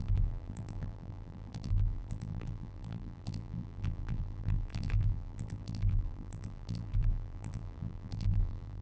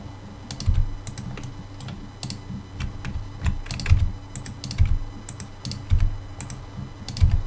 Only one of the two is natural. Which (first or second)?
second